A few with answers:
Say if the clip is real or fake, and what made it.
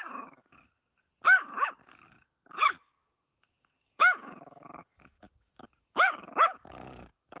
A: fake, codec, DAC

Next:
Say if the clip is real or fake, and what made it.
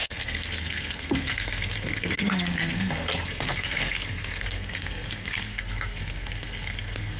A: fake, codec, SNAC